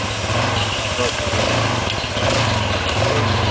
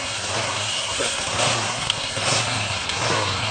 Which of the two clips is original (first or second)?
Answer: first